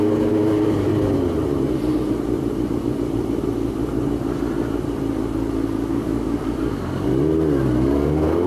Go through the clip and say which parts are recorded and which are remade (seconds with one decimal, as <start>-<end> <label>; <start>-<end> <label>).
0.0-0.9 remade; 0.9-5.9 recorded; 5.9-7.1 remade; 7.1-7.9 recorded; 7.9-8.5 remade